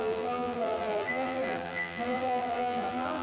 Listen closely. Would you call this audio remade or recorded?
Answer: remade